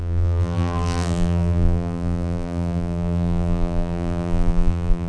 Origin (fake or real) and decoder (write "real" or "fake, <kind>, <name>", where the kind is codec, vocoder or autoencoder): fake, vocoder, BigVGAN v2